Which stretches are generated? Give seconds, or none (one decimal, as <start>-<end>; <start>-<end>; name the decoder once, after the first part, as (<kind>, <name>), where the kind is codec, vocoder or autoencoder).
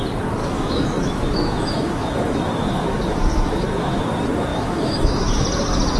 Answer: 0.4-4.0 (autoencoder, DAC-VAE); 4.5-5.4